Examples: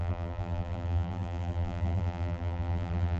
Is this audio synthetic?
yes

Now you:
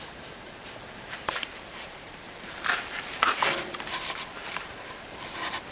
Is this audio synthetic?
yes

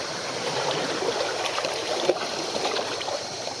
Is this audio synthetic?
yes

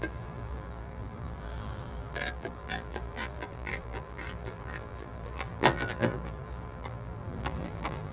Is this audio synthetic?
yes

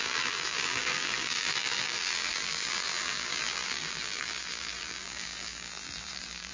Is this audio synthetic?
yes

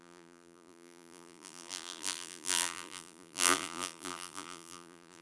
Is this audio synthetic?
yes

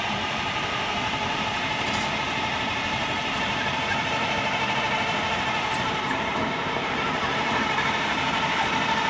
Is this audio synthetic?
yes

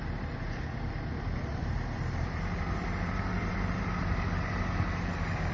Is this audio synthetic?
yes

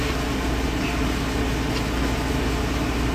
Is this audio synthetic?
no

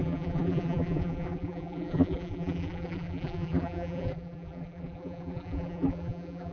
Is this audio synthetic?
yes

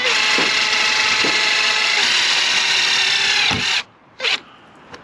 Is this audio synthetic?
no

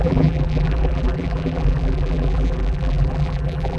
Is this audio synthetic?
yes